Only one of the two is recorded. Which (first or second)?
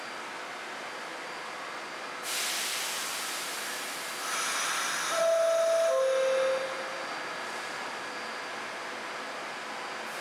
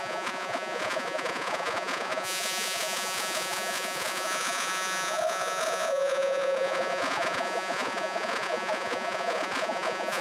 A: first